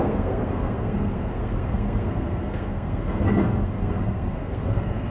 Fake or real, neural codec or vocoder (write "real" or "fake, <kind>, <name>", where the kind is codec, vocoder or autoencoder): fake, codec, SNAC